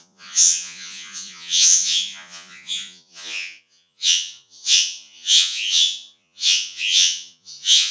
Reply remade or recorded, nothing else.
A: remade